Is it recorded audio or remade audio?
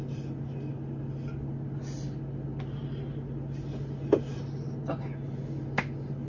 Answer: recorded